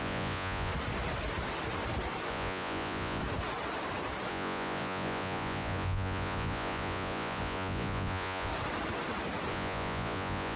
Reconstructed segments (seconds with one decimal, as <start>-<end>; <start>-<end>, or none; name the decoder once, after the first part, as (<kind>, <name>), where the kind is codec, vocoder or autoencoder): 0.0-0.7 (vocoder, Vocos); 2.3-3.2; 4.3-8.5; 9.5-10.6